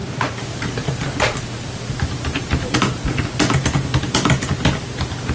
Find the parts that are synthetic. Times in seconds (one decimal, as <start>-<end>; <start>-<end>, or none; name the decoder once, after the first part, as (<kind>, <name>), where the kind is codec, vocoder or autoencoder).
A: 0.0-3.2 (vocoder, BigVGAN v2)